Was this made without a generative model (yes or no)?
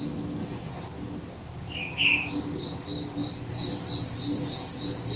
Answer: yes